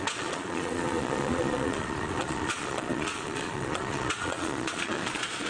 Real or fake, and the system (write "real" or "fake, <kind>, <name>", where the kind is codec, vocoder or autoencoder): fake, vocoder, Vocos